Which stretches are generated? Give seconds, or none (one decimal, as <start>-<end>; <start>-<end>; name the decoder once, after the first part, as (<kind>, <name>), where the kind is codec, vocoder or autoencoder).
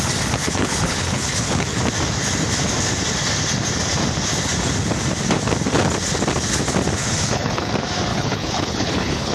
0.4-1.8 (codec, HILCodec); 7.0-7.7; 8.1-9.3